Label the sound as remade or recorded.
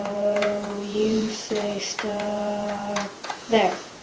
remade